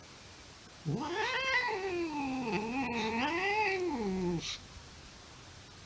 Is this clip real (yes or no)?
yes